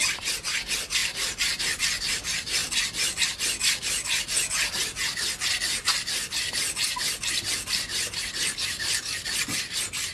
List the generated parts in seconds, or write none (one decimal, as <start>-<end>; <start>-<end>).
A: none